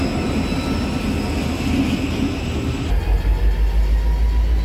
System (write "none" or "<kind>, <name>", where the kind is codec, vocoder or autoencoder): none